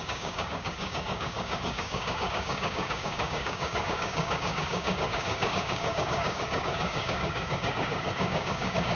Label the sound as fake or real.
fake